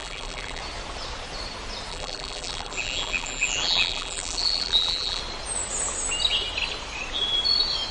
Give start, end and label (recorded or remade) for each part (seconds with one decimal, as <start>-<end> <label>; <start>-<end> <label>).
0.0-0.6 remade; 0.6-1.9 recorded; 1.9-5.2 remade; 5.2-7.9 recorded